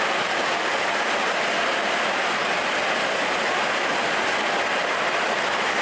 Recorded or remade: recorded